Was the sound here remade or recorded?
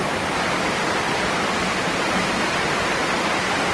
recorded